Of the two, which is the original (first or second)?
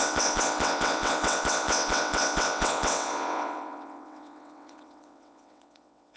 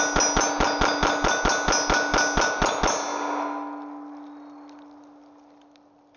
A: second